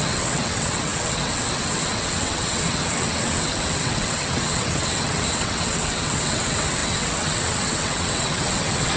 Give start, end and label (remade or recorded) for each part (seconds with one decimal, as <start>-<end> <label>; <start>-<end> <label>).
0.0-9.0 remade